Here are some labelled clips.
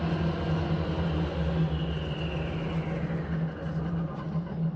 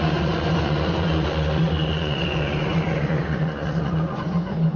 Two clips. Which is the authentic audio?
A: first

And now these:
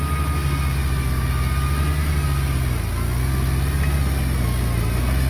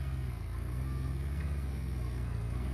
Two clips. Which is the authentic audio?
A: first